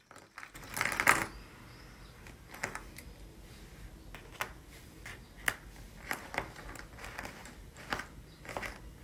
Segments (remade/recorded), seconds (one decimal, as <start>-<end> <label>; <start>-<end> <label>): 0.0-9.0 recorded

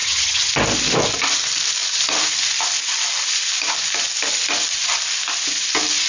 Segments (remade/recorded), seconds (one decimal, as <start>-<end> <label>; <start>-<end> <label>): 0.0-0.5 remade; 0.5-6.1 recorded

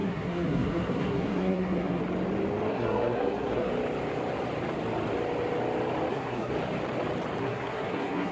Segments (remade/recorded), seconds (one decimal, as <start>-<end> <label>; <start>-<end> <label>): 0.0-2.0 remade; 2.0-2.7 recorded; 2.7-3.7 remade; 3.7-6.1 recorded; 6.1-6.5 remade; 6.5-7.4 recorded; 7.4-8.3 remade

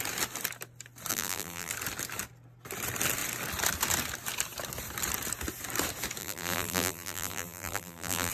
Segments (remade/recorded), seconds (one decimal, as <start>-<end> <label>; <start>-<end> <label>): 0.0-1.1 recorded; 1.1-1.7 remade; 1.7-6.2 recorded; 6.2-8.3 remade

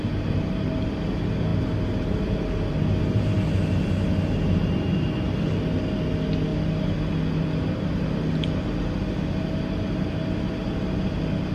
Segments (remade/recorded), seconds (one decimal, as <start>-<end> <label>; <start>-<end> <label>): 0.0-11.5 recorded

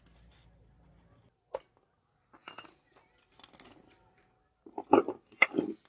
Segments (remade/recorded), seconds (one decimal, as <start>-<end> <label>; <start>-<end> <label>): 0.0-5.9 recorded

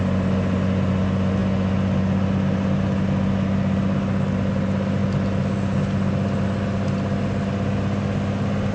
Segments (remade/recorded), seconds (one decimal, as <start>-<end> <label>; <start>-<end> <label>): 0.0-8.7 recorded

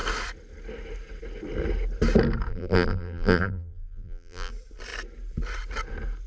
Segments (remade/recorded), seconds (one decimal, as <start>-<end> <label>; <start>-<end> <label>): 0.0-2.5 recorded; 2.5-4.5 remade; 4.5-6.3 recorded